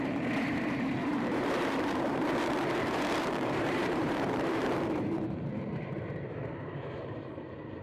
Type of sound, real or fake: fake